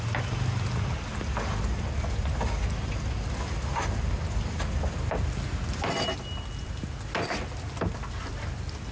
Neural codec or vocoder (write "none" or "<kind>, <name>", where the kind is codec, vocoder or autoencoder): none